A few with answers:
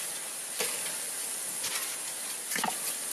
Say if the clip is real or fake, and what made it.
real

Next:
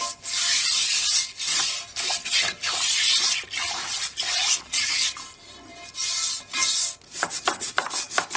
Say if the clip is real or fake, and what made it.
real